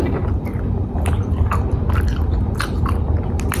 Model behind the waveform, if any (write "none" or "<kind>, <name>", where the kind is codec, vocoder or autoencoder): none